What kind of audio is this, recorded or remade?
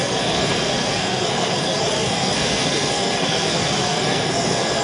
remade